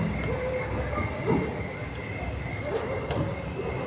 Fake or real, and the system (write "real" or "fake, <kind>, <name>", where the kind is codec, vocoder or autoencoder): real